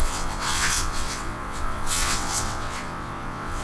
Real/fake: fake